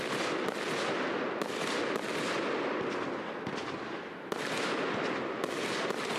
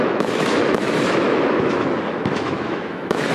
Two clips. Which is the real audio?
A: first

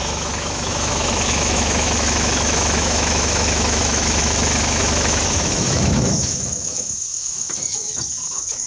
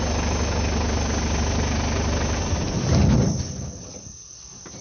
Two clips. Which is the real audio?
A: second